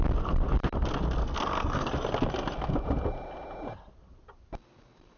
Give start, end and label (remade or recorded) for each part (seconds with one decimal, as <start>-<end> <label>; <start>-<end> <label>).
0.0-1.2 recorded; 1.2-1.9 remade; 1.9-5.2 recorded